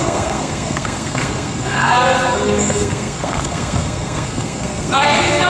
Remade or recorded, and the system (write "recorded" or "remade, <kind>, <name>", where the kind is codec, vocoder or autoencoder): remade, codec, SNAC